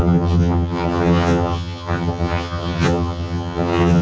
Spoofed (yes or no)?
yes